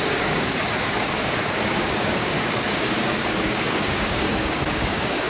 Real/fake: fake